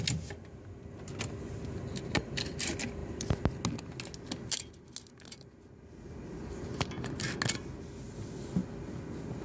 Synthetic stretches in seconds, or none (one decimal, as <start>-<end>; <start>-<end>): none